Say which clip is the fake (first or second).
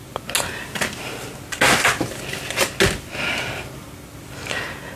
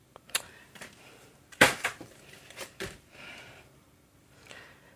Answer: second